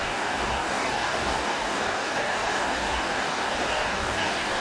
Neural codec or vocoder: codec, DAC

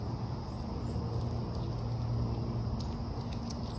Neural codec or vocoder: none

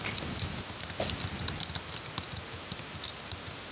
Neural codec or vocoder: none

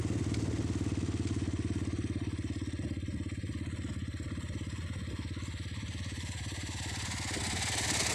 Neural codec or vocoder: none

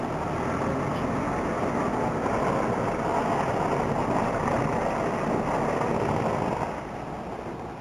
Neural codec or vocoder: none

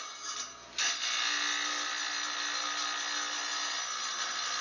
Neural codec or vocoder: none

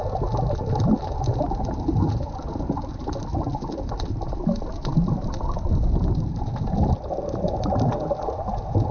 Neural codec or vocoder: none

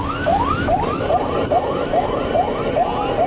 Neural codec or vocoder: none